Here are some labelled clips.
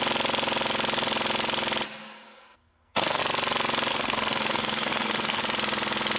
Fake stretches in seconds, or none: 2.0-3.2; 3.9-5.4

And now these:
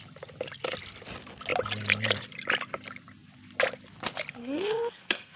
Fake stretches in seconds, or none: 4.4-5.4

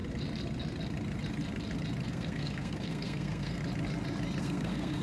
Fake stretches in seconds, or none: 2.1-3.6; 4.4-5.0

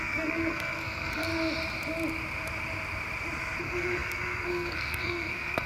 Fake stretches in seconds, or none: 0.0-1.3; 3.6-5.7

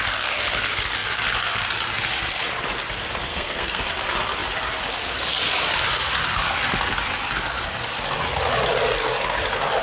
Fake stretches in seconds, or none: 3.3-3.8